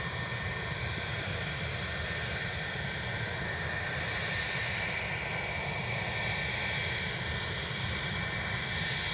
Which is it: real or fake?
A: real